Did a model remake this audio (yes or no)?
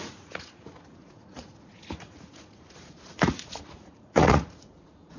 yes